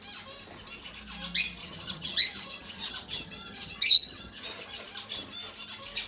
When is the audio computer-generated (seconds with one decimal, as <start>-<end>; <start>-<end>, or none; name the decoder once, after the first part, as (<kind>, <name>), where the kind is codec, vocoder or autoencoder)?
1.6-4.8 (vocoder, HiFi-GAN)